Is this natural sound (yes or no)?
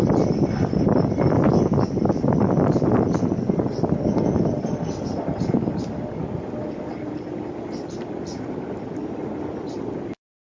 yes